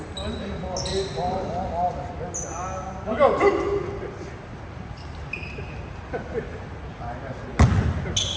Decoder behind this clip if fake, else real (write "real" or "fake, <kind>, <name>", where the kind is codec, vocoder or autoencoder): real